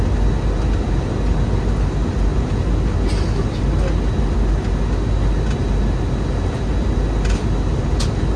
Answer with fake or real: real